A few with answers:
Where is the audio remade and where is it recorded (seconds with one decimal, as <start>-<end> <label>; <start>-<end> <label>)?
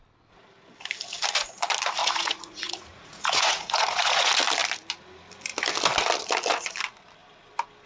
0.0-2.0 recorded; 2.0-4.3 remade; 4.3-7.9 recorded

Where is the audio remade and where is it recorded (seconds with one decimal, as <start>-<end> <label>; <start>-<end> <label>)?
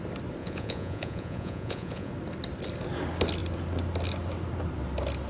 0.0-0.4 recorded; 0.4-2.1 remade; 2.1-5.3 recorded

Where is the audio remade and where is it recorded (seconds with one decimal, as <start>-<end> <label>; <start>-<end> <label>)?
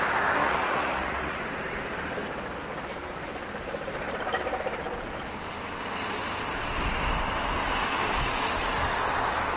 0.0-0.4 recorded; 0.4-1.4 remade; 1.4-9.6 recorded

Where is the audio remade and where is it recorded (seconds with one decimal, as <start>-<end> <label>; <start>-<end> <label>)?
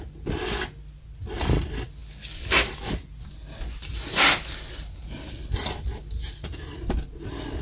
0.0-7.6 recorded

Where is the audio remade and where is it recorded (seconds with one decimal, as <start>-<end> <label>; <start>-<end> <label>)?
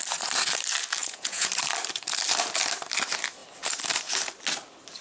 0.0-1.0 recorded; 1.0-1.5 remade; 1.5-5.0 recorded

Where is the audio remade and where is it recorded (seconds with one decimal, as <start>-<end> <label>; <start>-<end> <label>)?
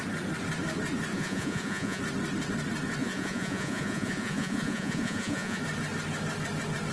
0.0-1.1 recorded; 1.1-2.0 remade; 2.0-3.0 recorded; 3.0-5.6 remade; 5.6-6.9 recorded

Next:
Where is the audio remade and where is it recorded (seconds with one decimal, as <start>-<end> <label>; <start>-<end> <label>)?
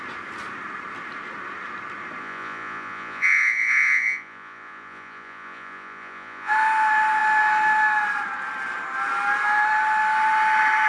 0.0-2.2 recorded; 2.2-6.5 remade; 6.5-10.9 recorded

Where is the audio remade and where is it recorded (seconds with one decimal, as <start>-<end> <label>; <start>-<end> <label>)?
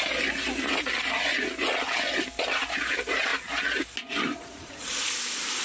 0.0-4.3 recorded; 4.3-5.1 remade; 5.1-5.6 recorded